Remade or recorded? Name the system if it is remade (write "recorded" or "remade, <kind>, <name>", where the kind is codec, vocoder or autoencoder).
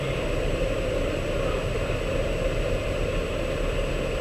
recorded